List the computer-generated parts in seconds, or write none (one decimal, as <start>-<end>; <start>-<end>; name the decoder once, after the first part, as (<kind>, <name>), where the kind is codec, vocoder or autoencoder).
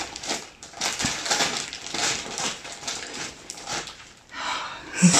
2.0-4.7 (vocoder, BigVGAN v2)